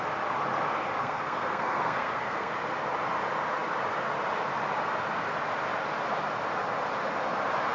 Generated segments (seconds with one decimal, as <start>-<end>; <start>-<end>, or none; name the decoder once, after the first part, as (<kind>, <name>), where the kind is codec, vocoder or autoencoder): 1.0-2.5 (codec, SNAC)